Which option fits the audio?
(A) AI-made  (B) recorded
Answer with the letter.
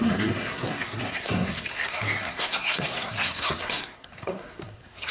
A